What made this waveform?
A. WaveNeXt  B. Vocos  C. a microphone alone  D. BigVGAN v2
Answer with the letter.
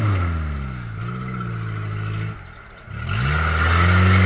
C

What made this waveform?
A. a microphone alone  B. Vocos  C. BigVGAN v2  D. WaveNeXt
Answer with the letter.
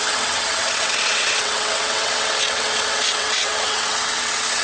D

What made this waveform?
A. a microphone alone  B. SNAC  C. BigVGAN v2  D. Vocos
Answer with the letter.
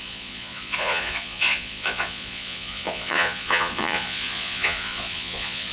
D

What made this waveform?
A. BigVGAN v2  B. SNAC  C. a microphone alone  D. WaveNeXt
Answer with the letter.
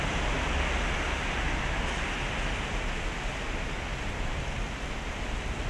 C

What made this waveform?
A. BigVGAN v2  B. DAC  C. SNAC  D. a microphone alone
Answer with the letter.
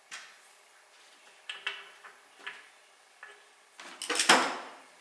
D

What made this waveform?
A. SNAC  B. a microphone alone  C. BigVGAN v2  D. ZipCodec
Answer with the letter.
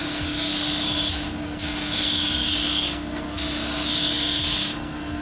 A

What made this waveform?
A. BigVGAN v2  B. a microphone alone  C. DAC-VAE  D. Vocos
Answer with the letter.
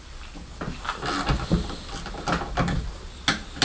B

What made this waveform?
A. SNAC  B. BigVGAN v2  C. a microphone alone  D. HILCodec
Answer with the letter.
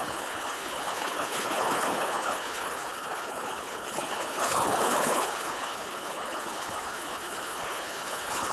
D